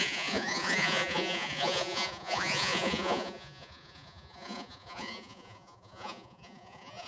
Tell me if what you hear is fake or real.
fake